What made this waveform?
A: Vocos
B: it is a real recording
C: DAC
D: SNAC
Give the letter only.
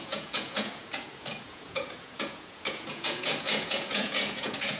A